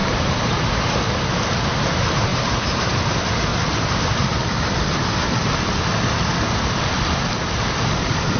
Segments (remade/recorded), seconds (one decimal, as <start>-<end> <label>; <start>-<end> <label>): 0.0-0.7 remade; 0.7-2.3 recorded; 2.3-3.0 remade; 3.0-3.5 recorded; 3.5-4.3 remade; 4.3-8.4 recorded